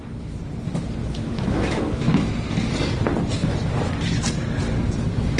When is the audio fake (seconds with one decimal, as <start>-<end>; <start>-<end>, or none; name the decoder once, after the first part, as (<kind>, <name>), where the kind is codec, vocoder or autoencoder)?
1.0-2.3 (autoencoder, DAC-VAE)